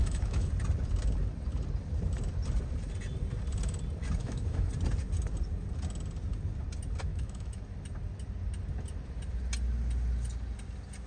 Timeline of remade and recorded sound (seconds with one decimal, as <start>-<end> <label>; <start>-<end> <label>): 0.0-0.5 remade; 0.5-4.2 recorded; 4.2-4.7 remade; 4.7-7.1 recorded; 7.1-7.6 remade; 7.6-11.1 recorded